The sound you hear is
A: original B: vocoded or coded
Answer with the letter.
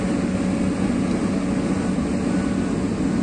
A